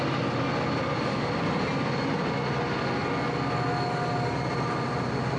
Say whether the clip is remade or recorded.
recorded